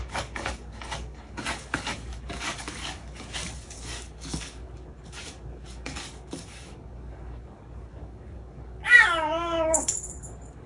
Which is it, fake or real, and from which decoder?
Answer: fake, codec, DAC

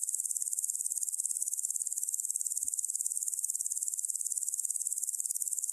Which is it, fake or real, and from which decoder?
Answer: real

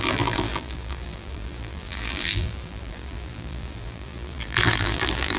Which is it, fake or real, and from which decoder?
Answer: fake, vocoder, BigVGAN v2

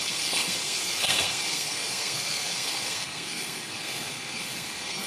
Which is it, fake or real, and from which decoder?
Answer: fake, codec, SNAC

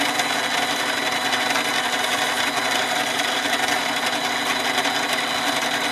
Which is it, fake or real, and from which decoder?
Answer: real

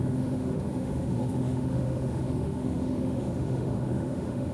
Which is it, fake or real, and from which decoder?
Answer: fake, autoencoder, DAC-VAE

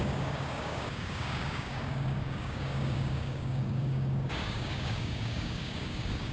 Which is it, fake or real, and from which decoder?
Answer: fake, codec, DAC